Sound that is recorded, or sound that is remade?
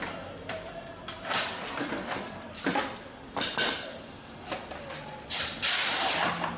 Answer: remade